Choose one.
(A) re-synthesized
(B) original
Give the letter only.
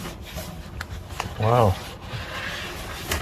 B